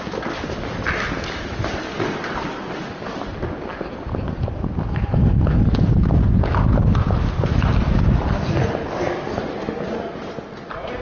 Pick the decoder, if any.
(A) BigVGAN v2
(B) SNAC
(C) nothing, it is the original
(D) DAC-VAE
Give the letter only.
C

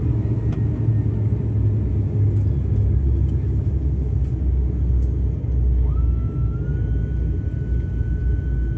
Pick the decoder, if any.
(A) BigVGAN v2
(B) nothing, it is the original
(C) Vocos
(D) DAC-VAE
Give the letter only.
B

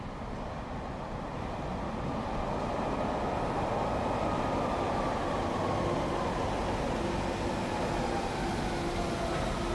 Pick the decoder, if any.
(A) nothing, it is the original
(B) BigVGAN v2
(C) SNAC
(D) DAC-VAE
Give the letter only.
A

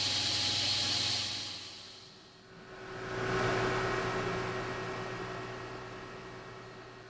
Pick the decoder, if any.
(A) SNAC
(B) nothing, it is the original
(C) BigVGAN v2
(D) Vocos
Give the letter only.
B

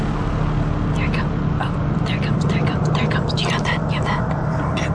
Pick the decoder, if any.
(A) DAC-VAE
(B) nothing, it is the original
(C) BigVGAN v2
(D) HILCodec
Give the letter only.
C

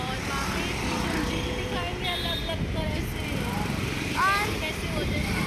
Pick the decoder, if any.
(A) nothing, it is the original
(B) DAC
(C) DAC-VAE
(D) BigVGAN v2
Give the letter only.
A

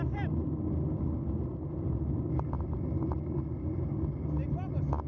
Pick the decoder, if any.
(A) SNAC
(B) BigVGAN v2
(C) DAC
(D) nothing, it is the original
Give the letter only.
D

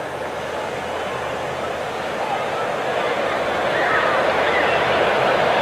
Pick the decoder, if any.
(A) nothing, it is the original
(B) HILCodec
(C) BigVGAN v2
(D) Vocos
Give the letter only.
A